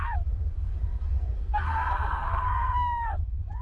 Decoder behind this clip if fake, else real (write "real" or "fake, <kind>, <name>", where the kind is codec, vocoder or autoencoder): fake, codec, SNAC